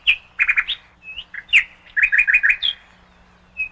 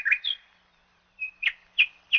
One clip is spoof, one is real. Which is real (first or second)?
first